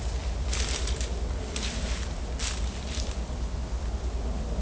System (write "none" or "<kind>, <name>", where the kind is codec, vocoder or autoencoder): none